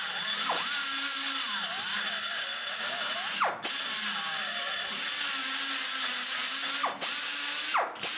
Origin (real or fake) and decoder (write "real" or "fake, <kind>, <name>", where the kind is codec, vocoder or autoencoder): real